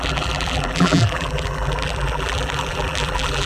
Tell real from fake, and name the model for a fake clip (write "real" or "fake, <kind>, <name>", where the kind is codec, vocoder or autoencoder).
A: fake, vocoder, BigVGAN v2